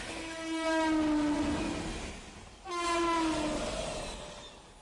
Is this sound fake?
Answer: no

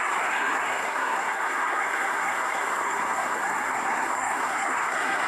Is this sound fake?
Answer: yes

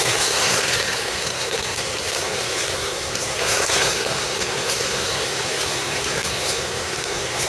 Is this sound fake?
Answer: yes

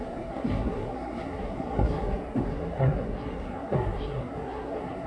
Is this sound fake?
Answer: yes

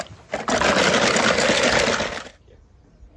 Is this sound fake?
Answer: no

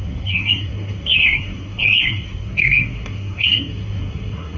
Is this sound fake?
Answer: yes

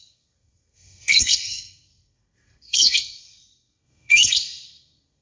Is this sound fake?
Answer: yes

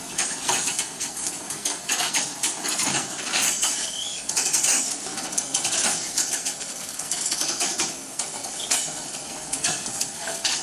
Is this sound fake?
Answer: yes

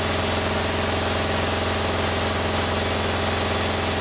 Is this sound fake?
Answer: no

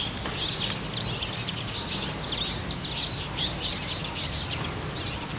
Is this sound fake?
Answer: no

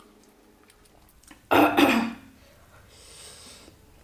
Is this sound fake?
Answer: no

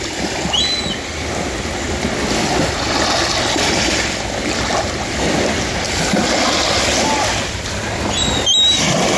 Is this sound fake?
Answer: no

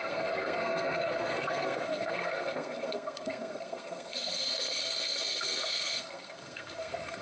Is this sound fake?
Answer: yes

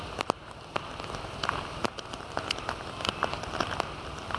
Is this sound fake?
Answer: no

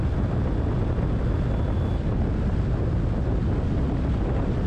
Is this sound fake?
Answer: no